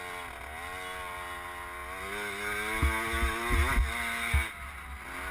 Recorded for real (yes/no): yes